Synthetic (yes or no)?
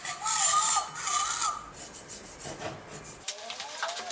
no